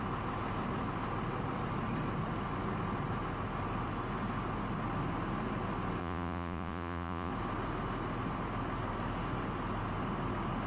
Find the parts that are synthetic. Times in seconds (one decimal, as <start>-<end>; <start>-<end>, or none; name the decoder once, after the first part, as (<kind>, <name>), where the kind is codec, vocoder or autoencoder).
6.0-7.3 (vocoder, Vocos)